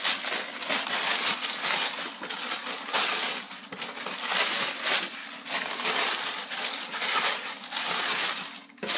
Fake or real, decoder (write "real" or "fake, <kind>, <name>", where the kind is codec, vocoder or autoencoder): real